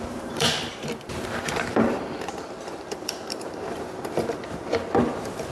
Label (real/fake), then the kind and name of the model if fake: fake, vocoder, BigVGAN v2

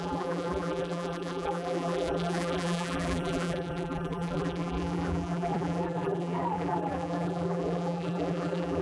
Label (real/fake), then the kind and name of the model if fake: fake, vocoder, BigVGAN v2